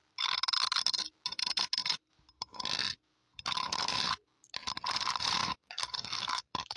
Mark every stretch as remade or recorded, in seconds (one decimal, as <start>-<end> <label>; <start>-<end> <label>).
0.0-5.4 recorded; 5.4-6.8 remade